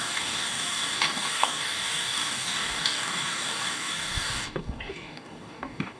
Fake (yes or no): yes